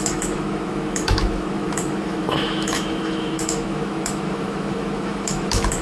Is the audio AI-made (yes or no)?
yes